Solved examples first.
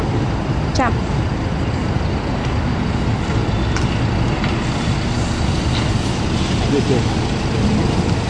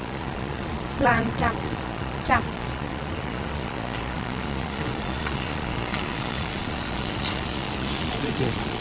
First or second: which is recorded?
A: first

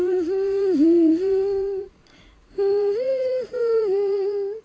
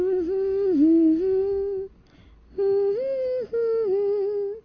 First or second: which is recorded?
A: second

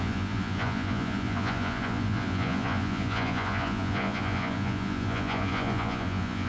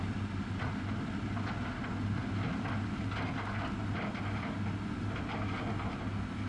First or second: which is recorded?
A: second